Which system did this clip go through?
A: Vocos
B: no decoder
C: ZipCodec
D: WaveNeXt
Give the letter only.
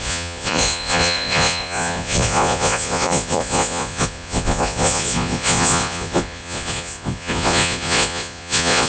A